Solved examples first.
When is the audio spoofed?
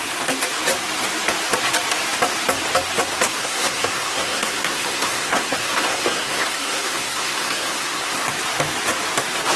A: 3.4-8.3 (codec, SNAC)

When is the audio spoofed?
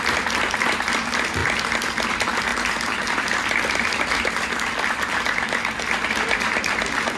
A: none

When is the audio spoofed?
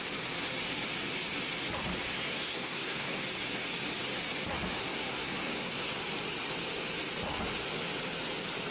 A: 2.1-3.2 (codec, SNAC); 4.8-5.9